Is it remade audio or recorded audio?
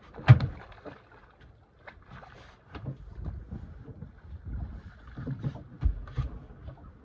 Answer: recorded